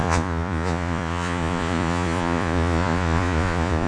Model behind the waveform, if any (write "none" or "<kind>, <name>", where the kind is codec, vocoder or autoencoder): vocoder, Vocos